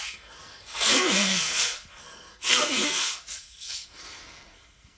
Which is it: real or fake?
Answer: fake